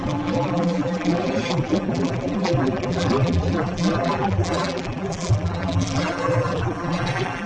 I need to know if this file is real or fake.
fake